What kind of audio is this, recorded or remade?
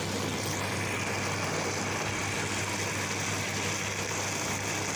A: recorded